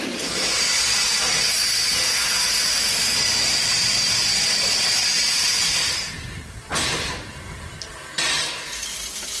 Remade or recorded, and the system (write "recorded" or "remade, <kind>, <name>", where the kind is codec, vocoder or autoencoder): recorded